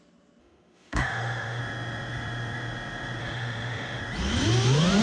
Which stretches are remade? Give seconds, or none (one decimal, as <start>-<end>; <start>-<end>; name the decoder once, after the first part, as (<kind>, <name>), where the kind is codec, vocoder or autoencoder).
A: 0.4-1.6 (autoencoder, DAC-VAE); 3.2-4.0